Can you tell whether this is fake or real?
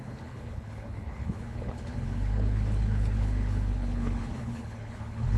fake